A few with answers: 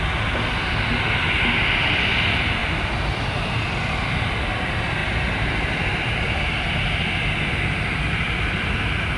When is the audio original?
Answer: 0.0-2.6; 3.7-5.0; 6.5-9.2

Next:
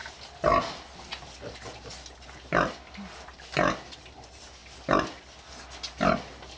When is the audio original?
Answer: 0.0-6.6

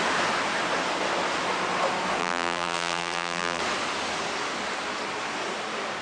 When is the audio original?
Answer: 0.0-2.2; 3.6-6.0

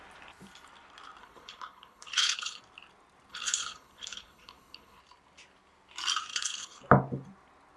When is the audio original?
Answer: 0.0-1.2; 2.6-3.3; 5.0-6.3; 6.8-7.8